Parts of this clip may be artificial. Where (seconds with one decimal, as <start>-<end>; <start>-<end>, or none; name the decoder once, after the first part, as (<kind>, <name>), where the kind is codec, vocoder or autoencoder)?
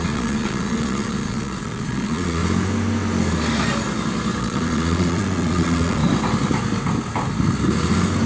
0.0-2.4 (vocoder, Vocos); 4.4-6.0